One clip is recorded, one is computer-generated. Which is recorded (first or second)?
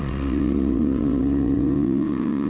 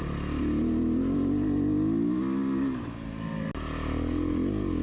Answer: second